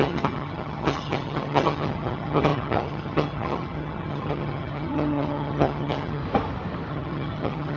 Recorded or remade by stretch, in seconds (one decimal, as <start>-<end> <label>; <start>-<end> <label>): 0.0-6.2 remade; 6.2-6.9 recorded; 6.9-7.8 remade